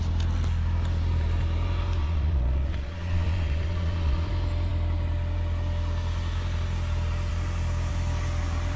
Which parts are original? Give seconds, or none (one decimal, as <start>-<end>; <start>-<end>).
0.0-2.0; 4.3-8.8

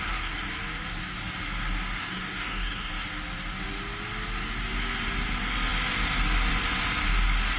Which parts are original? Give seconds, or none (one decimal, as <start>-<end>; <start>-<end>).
0.0-2.0; 2.9-7.6